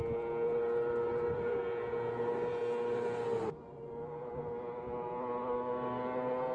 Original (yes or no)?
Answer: yes